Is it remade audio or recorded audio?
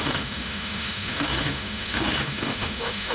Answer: remade